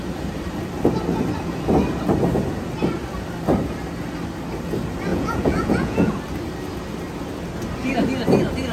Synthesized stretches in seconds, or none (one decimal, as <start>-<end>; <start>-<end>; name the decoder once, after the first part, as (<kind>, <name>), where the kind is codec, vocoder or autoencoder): 5.1-6.1 (vocoder, Vocos)